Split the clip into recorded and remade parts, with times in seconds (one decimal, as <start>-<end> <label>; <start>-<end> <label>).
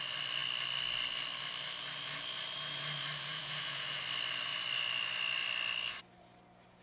0.0-3.3 recorded; 3.3-4.0 remade; 4.0-6.8 recorded